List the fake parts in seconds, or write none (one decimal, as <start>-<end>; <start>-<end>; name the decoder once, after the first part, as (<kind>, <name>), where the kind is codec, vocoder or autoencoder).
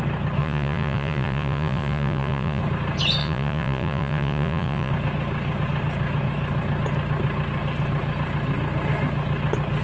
0.4-2.6 (vocoder, Vocos); 3.2-4.9